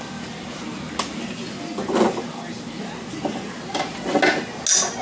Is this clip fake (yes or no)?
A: no